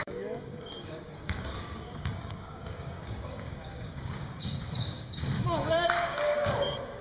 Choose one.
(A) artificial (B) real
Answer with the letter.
A